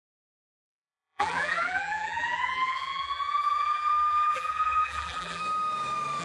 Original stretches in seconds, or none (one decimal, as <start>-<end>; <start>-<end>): 5.4-6.2